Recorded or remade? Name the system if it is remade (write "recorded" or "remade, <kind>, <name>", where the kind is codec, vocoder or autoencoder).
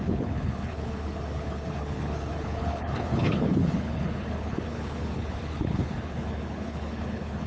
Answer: remade, codec, HILCodec